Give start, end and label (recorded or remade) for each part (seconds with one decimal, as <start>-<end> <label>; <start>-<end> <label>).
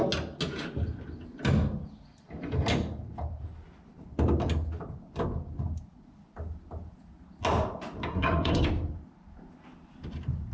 0.0-8.1 recorded; 8.1-8.6 remade; 8.6-10.5 recorded